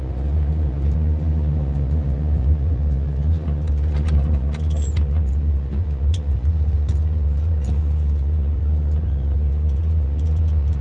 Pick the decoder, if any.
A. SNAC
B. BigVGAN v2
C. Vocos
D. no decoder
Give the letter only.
C